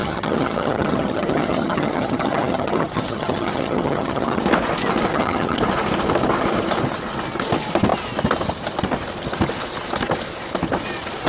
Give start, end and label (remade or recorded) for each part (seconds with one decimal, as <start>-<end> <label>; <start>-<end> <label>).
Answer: 0.0-4.4 remade; 4.4-5.1 recorded; 5.1-5.6 remade; 5.6-11.3 recorded